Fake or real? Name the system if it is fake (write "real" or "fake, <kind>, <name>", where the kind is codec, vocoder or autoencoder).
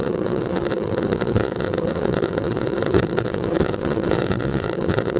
fake, vocoder, WaveNeXt